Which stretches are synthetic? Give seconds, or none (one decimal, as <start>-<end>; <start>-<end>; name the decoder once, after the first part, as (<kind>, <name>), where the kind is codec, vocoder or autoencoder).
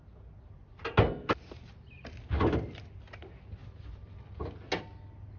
3.6-4.4 (vocoder, BigVGAN v2)